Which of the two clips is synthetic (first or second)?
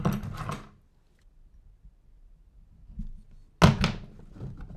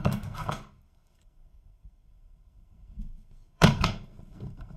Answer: second